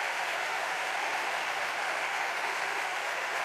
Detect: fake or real fake